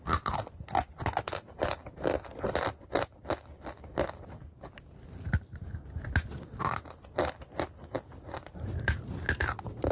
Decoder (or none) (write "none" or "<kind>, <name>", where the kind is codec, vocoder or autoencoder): none